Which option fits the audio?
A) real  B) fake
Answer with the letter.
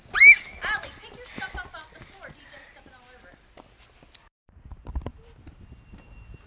A